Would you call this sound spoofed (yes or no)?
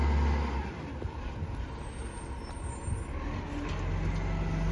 no